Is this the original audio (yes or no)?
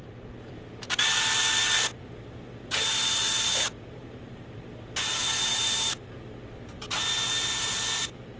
yes